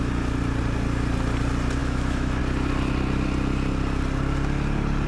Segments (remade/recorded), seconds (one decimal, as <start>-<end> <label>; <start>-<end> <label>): 0.0-1.8 recorded; 1.8-2.4 remade; 2.4-5.1 recorded